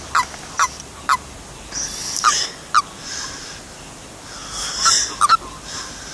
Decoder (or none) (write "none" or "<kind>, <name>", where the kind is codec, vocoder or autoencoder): none